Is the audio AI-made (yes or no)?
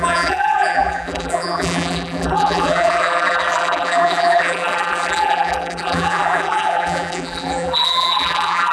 yes